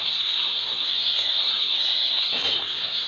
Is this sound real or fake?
fake